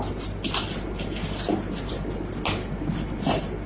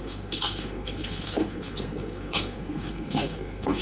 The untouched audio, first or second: first